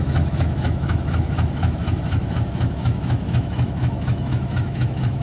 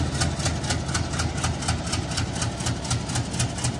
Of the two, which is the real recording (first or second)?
second